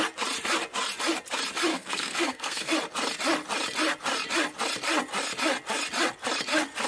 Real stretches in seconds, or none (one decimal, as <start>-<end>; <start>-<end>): 0.0-1.7; 2.7-6.9